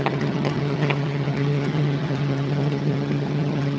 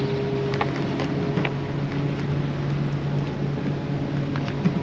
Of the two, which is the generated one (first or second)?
first